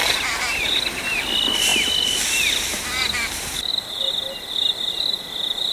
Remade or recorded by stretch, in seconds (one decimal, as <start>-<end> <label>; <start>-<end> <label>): 0.0-1.7 remade; 1.7-2.6 recorded; 2.6-3.7 remade; 3.7-4.9 recorded; 4.9-5.7 remade